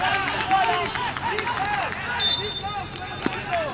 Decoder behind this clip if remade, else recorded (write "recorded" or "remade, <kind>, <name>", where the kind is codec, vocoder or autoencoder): recorded